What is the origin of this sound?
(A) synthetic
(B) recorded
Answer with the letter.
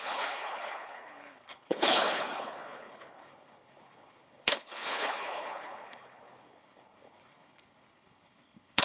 A